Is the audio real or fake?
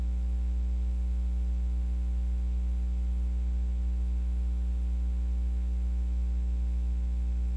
real